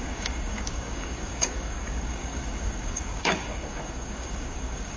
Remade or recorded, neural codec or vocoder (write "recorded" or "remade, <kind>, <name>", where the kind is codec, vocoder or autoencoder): remade, codec, DAC